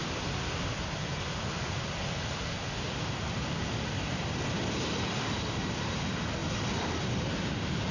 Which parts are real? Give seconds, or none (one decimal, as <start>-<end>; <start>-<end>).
0.0-7.9